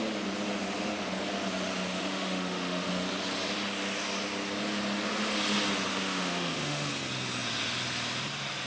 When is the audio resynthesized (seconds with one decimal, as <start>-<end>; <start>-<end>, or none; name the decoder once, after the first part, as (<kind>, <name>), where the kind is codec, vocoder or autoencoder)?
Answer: 1.9-2.9 (autoencoder, DAC-VAE); 5.9-6.9